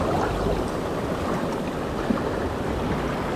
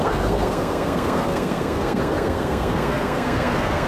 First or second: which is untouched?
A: first